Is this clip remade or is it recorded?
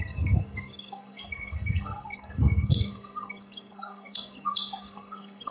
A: remade